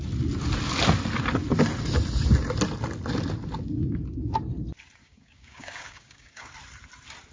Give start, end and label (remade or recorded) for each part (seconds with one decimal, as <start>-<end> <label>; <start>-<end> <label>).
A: 0.0-5.0 recorded; 5.0-6.5 remade; 6.5-7.3 recorded